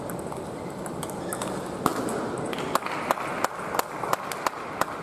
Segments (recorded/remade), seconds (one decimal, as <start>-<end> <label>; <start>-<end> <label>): 0.0-5.0 recorded